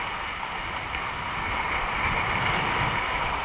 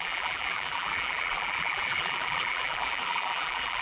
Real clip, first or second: first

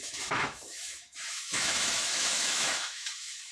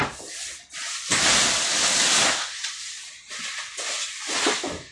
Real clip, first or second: second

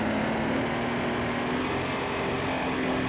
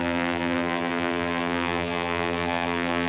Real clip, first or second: first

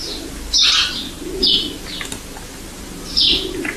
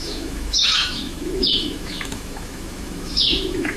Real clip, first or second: first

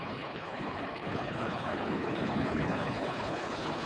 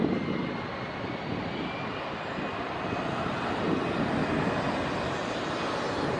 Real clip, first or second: second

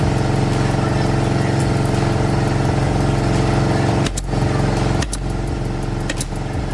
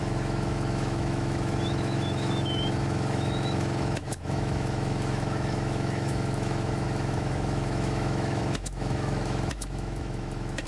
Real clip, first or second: first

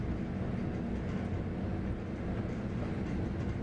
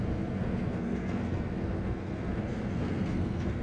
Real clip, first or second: first